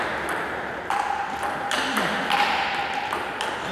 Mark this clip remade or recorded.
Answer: recorded